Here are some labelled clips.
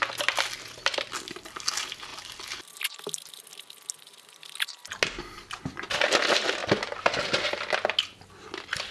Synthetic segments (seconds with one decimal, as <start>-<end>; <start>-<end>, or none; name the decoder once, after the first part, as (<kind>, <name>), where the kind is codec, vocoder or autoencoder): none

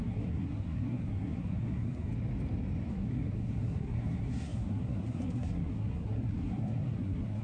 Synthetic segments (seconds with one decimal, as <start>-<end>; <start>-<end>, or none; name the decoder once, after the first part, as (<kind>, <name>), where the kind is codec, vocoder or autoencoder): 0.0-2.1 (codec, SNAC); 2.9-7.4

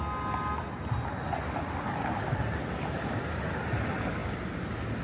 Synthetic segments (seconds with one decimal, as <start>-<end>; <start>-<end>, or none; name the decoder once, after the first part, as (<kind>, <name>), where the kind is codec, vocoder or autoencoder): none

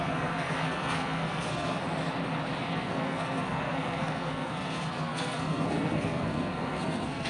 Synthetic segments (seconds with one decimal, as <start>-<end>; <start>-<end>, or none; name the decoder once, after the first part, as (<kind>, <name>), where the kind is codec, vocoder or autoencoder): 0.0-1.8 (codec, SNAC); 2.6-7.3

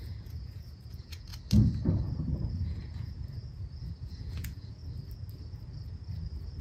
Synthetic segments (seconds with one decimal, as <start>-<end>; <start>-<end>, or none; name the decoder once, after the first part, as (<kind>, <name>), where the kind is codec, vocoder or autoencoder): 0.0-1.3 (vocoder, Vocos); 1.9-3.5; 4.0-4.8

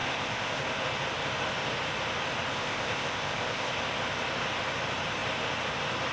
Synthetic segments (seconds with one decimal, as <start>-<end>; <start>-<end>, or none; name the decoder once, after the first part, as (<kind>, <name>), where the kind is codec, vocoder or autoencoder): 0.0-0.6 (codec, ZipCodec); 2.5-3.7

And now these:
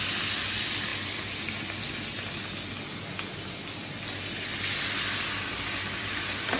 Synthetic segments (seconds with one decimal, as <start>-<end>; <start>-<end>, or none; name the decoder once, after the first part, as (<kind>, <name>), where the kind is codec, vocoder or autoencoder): none

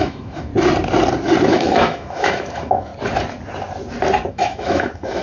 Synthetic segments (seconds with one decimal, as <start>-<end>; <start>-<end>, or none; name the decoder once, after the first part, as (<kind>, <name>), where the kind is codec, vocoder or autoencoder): 0.0-0.5 (autoencoder, DAC-VAE); 1.5-2.9; 4.3-5.2